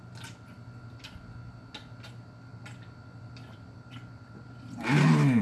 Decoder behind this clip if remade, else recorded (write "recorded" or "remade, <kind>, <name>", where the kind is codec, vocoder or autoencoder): recorded